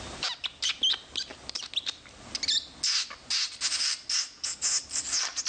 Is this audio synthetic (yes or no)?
no